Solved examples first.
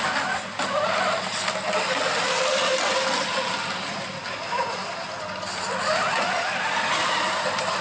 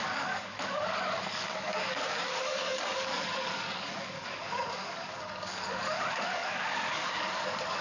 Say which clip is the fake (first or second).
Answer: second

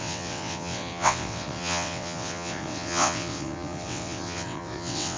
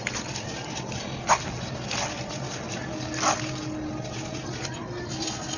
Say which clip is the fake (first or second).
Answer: first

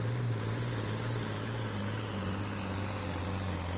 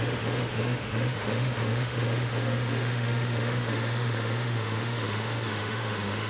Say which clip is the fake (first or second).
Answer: second